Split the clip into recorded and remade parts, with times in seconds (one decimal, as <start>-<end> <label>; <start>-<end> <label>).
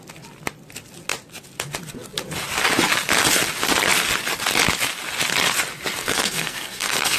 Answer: 0.0-6.0 recorded; 6.0-7.2 remade